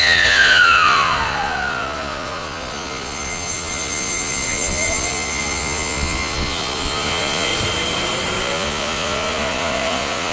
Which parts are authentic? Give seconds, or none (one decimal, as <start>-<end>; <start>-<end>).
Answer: 7.5-8.4